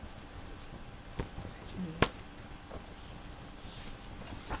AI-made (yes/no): no